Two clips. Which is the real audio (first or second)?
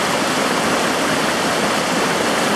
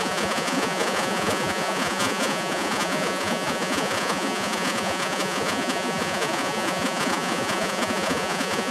first